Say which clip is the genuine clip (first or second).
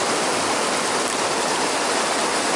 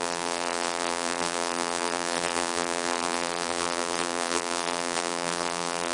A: first